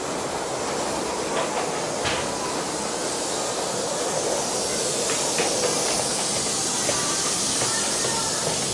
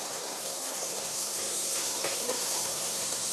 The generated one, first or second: second